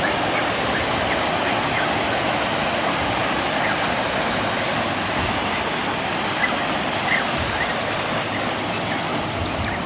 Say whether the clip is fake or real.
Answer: real